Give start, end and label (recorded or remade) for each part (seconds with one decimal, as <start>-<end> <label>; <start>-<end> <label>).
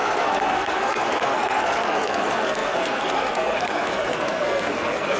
0.0-5.2 remade